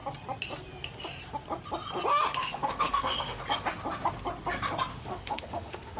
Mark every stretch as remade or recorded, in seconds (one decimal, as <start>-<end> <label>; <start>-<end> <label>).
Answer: 0.0-2.4 recorded; 2.4-3.4 remade; 3.4-4.9 recorded; 4.9-6.0 remade